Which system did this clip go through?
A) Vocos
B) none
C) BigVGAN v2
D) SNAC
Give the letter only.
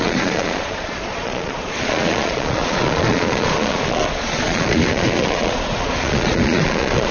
A